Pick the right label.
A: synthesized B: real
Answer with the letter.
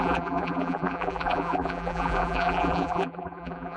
A